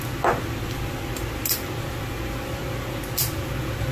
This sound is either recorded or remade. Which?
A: recorded